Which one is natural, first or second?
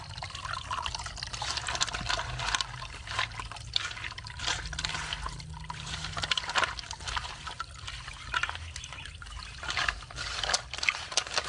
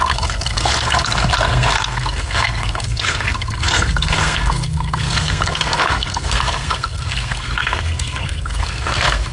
first